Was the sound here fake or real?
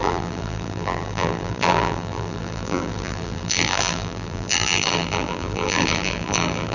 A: fake